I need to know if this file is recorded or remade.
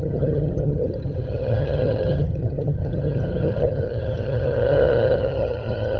remade